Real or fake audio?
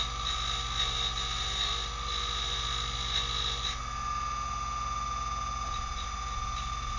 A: real